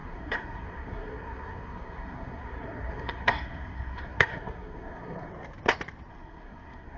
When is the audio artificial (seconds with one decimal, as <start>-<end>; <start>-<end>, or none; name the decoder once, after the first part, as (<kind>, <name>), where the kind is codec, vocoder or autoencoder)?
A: 0.0-5.3 (codec, SNAC); 6.1-7.0